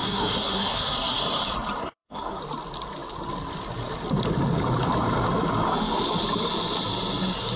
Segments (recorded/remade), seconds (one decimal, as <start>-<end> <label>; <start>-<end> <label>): 0.0-1.2 remade; 1.2-1.8 recorded; 1.8-2.4 remade; 2.4-7.6 recorded